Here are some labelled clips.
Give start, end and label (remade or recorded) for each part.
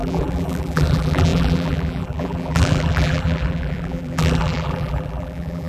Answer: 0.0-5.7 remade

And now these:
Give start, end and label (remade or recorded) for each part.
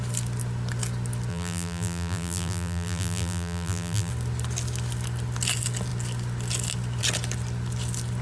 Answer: 0.0-1.3 recorded; 1.3-4.1 remade; 4.1-8.2 recorded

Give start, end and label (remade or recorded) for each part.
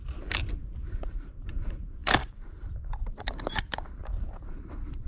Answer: 0.0-5.1 remade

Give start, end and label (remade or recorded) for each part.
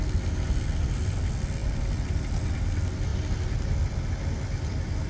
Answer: 0.0-5.1 recorded